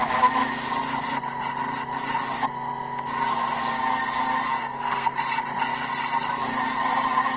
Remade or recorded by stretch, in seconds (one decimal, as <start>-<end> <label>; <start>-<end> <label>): 0.0-4.6 recorded; 4.6-5.2 remade; 5.2-7.4 recorded